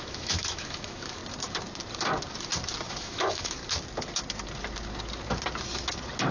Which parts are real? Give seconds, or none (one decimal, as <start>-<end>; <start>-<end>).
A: 1.2-2.9; 3.6-6.3